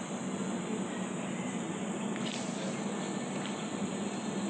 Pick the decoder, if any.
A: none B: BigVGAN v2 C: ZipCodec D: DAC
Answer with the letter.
A